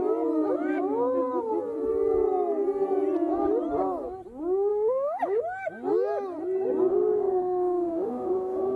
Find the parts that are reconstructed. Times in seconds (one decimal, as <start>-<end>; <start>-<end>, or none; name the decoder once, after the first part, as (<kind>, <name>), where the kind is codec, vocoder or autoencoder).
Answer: 4.7-5.2 (autoencoder, DAC-VAE); 6.9-8.8